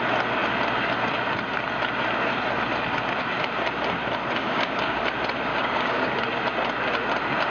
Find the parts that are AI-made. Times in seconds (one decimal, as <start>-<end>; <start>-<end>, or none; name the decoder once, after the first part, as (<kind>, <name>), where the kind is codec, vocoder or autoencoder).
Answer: 4.4-5.0 (codec, DAC); 5.5-6.1